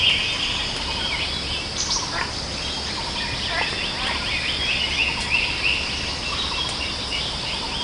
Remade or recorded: recorded